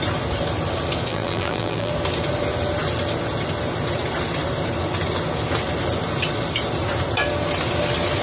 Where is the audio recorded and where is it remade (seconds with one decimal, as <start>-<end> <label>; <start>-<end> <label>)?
0.0-1.1 recorded; 1.1-1.9 remade; 1.9-8.2 recorded